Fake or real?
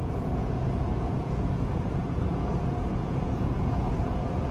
fake